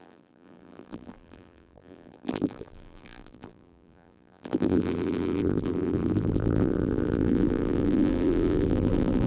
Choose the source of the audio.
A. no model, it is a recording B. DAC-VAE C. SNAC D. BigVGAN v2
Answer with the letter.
D